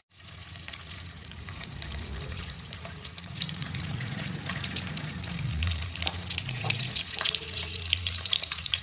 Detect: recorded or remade remade